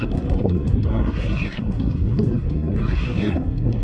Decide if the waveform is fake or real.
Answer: fake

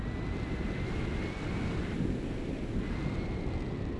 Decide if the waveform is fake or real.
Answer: real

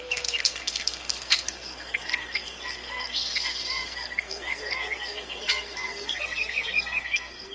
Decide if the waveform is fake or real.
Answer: fake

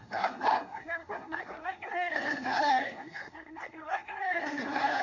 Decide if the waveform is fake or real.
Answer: fake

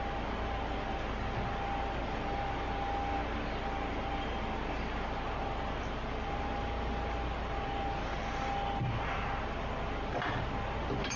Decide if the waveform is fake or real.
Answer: real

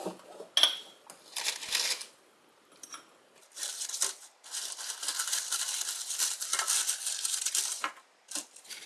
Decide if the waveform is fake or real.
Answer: real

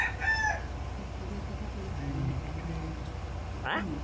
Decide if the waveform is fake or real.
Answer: real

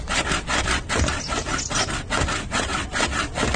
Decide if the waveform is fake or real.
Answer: real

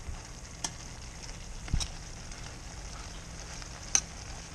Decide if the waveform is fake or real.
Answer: real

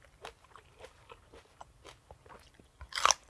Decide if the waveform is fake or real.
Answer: real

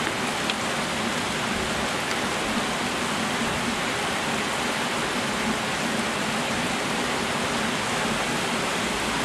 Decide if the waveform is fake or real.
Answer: real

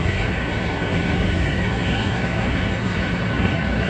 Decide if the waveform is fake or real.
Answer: fake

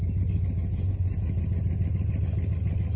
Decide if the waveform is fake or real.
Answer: real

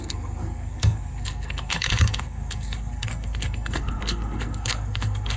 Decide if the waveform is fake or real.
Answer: fake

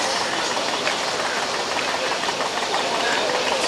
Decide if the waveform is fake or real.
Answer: real